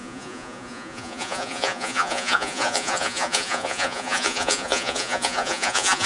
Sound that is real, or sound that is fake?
fake